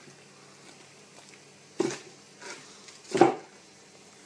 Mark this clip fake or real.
real